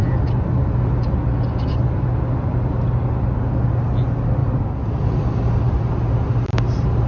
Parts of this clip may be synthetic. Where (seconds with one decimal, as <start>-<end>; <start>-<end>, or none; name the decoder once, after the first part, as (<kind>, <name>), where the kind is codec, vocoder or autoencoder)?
4.4-5.9 (vocoder, BigVGAN v2)